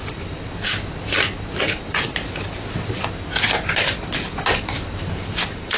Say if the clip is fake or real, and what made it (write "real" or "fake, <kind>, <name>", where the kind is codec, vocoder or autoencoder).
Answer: real